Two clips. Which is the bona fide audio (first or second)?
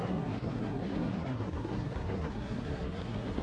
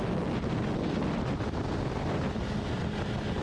second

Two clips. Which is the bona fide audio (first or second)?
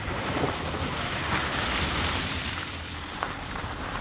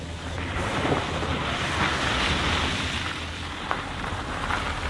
second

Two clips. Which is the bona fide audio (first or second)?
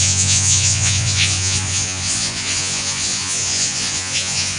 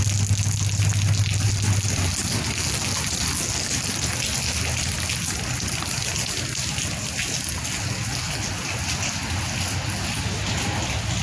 second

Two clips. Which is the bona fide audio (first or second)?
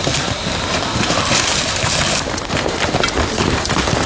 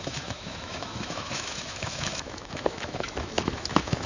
first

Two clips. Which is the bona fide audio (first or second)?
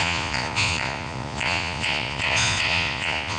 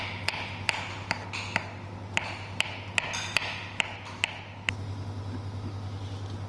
second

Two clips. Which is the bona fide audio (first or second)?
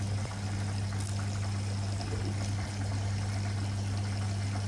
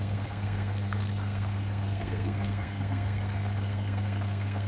first